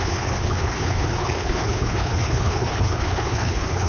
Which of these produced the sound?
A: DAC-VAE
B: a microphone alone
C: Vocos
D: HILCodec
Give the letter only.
D